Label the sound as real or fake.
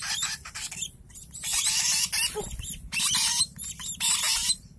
real